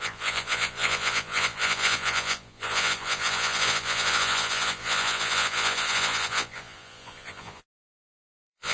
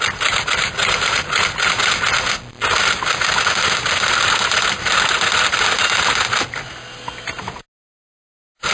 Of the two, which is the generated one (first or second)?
first